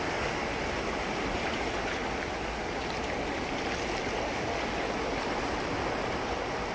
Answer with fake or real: real